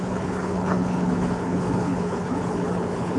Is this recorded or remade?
remade